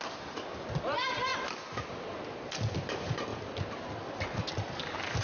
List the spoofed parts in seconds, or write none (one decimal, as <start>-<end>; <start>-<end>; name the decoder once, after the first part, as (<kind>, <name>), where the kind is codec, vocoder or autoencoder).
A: none